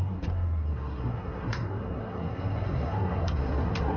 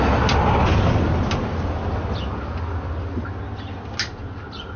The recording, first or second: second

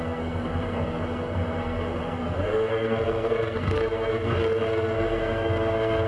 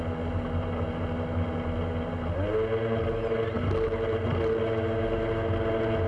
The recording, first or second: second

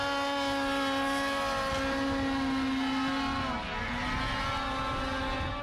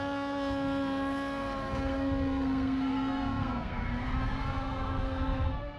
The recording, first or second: first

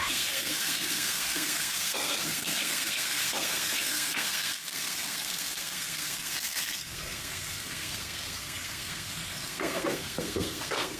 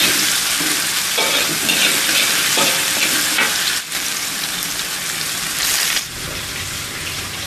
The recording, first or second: second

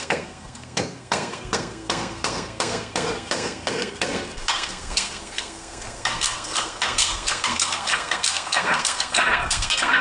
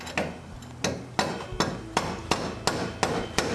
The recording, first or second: second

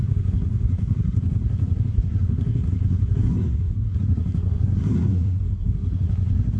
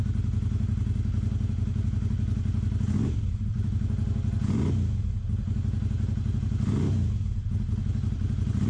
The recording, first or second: second